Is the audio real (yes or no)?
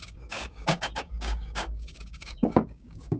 no